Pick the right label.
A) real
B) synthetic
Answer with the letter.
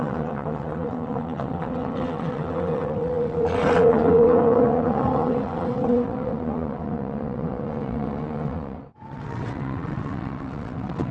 B